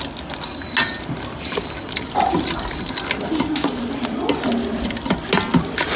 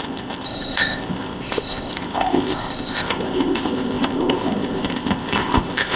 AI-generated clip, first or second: second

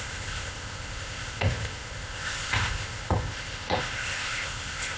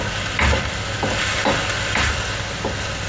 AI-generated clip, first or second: first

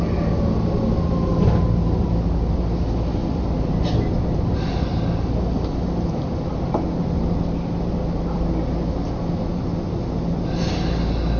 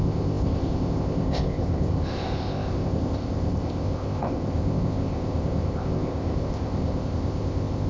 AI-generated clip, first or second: second